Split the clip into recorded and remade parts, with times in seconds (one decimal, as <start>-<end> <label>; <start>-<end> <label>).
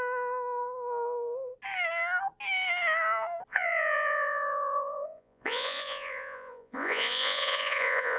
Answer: 0.0-3.5 recorded; 3.5-8.2 remade